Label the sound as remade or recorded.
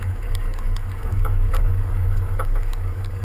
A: remade